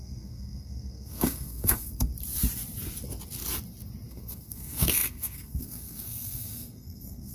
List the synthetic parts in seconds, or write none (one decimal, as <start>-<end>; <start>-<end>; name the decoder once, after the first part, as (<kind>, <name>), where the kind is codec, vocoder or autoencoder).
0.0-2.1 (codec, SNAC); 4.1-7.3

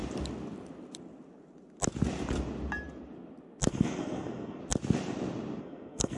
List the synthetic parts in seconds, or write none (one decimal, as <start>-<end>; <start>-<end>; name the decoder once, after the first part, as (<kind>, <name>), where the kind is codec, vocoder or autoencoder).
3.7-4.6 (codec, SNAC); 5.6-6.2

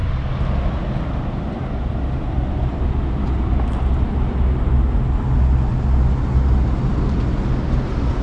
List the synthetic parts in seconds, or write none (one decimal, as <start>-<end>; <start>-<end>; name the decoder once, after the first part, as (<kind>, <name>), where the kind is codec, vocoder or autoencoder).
none

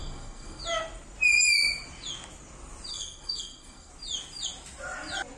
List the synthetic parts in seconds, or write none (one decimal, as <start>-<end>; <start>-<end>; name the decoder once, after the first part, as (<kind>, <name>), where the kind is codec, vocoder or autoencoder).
0.0-0.6 (codec, SNAC); 2.9-3.9

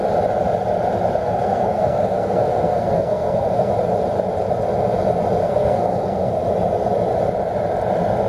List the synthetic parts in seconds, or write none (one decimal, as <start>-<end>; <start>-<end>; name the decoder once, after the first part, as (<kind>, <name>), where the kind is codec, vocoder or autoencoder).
1.2-3.7 (codec, SNAC); 5.4-6.4

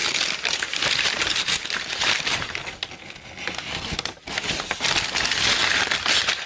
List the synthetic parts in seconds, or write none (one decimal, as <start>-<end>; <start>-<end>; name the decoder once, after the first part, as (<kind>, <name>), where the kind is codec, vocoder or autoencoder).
none

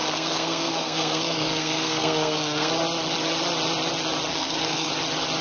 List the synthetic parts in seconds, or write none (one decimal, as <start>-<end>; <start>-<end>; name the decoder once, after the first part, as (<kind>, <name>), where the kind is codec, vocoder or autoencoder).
0.0-2.7 (codec, SNAC); 4.3-4.9